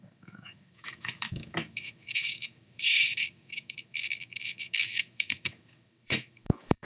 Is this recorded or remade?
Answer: remade